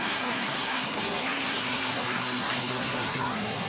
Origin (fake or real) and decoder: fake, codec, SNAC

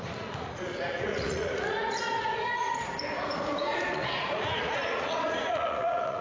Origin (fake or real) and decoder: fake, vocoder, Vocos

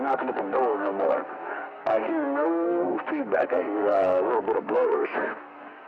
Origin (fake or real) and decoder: fake, codec, SNAC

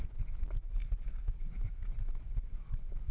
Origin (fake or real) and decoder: real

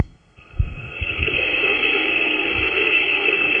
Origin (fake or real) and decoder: fake, codec, SNAC